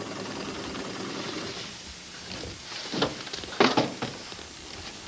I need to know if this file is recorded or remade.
recorded